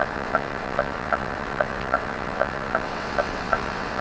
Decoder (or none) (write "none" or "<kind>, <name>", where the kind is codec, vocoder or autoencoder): vocoder, WaveNeXt